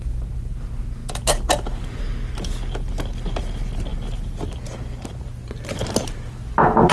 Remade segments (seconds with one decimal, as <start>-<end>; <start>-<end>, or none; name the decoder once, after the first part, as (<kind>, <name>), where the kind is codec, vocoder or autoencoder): none